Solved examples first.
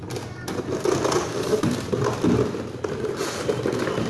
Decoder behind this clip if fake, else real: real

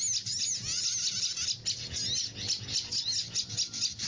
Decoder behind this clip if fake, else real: real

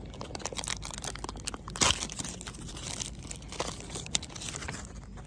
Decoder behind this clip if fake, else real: real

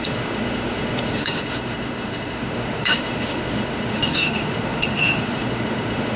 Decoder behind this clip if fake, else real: fake, autoencoder, DAC-VAE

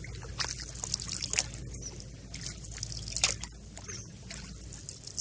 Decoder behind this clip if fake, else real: real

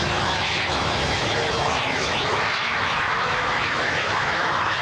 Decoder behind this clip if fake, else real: fake, autoencoder, DAC-VAE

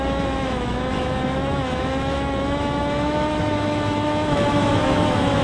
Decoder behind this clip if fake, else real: fake, autoencoder, DAC-VAE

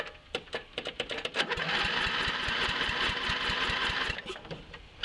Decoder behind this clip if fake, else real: real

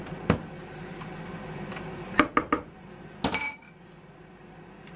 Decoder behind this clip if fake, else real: real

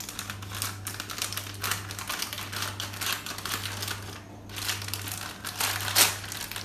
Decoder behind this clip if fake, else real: real